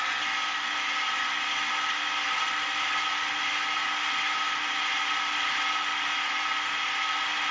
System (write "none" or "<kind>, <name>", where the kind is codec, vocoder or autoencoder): none